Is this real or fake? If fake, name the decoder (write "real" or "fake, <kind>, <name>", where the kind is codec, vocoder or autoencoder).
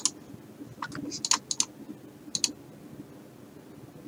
real